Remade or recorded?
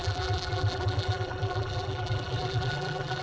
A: remade